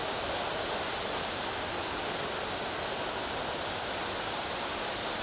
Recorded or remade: recorded